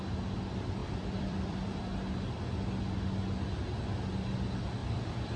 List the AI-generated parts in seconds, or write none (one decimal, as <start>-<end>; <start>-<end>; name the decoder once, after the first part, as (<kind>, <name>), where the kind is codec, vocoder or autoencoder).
0.8-1.8 (vocoder, BigVGAN v2); 4.8-5.4